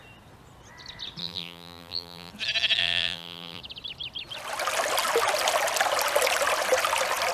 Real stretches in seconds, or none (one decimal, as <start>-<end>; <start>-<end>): 0.0-1.2; 2.3-2.8; 3.6-7.3